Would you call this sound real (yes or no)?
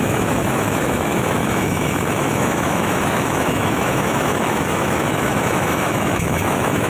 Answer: no